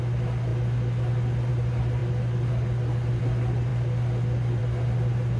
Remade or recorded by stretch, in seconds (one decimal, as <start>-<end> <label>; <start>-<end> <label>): 0.0-5.4 recorded